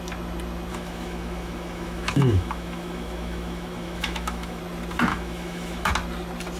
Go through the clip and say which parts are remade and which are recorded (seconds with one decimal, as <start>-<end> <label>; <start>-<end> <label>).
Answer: 0.0-0.7 recorded; 0.7-4.6 remade; 4.6-5.1 recorded; 5.1-5.9 remade; 5.9-6.6 recorded